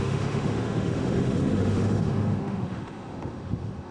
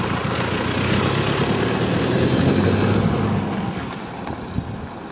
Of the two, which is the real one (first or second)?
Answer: second